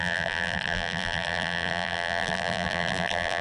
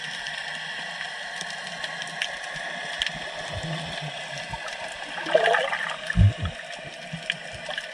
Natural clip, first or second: second